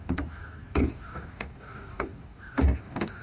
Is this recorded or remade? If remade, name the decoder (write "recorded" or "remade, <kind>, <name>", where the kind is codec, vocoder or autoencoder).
remade, codec, DAC